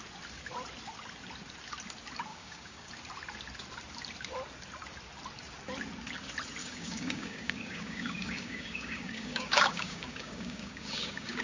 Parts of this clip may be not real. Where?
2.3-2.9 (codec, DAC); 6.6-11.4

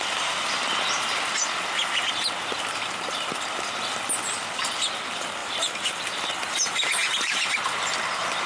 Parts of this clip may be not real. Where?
7.0-7.5 (vocoder, BigVGAN v2)

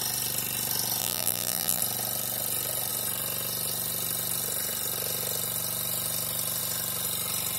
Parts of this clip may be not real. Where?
1.0-1.8 (vocoder, BigVGAN v2)

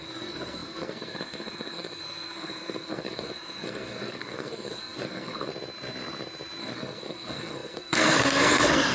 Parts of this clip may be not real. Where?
0.0-5.5 (codec, SNAC); 6.6-8.9